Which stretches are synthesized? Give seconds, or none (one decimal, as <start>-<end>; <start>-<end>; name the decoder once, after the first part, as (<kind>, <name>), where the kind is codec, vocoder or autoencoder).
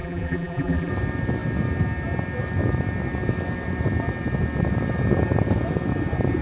0.0-0.9 (vocoder, BigVGAN v2)